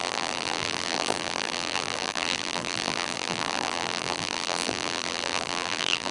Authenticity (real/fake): fake